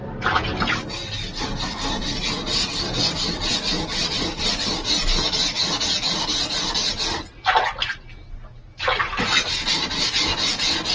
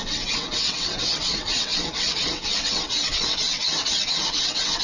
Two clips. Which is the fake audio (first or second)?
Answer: second